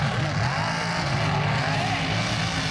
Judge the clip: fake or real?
real